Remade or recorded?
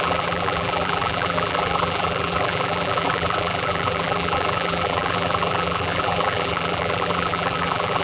remade